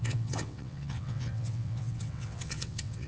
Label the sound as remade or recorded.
remade